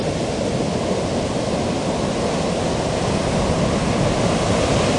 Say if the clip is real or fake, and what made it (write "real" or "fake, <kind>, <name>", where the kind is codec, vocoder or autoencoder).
real